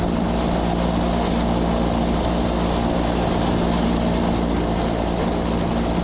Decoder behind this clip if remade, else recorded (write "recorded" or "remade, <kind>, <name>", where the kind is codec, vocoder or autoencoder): recorded